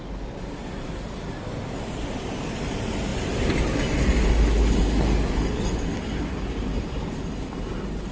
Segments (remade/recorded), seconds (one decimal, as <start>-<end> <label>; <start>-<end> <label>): 0.0-8.1 recorded